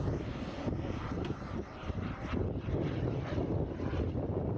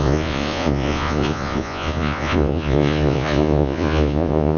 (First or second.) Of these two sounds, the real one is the first